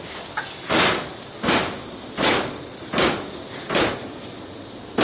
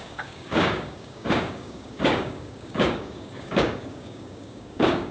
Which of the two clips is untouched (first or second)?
first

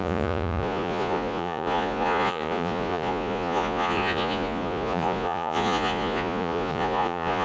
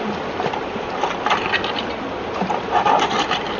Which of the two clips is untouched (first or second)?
second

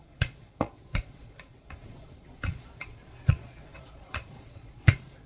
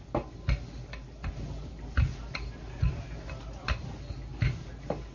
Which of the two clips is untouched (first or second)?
second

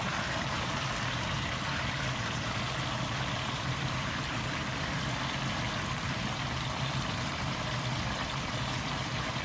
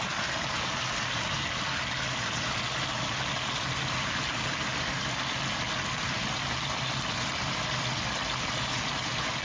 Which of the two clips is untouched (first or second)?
second